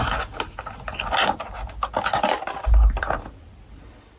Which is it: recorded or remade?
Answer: recorded